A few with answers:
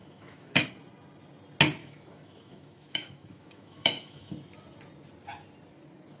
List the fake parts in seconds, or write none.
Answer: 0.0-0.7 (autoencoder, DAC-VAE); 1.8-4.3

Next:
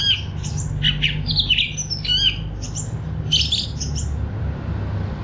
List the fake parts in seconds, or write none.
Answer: none

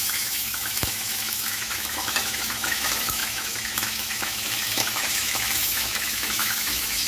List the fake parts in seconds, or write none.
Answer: 0.0-7.1 (autoencoder, DAC-VAE)

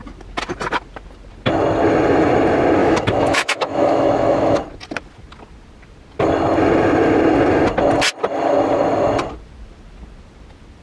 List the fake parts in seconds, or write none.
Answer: 2.8-4.6 (autoencoder, DAC-VAE)

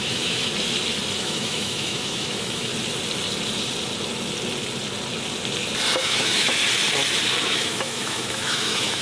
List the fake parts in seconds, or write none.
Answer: 0.0-0.5 (autoencoder, DAC-VAE); 1.2-2.7; 6.0-6.6; 7.4-9.0

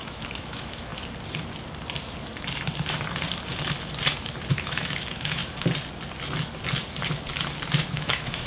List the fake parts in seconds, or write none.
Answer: 0.0-0.9 (autoencoder, DAC-VAE); 4.5-5.4; 7.9-8.5

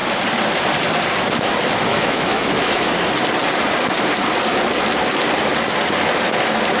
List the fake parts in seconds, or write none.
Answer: 1.9-2.9 (autoencoder, DAC-VAE)

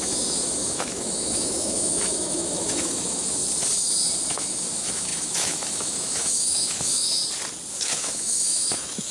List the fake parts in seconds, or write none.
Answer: 0.0-3.4 (autoencoder, DAC-VAE); 4.3-7.2; 7.7-9.1